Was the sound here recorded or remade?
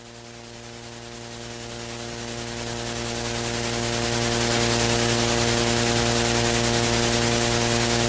recorded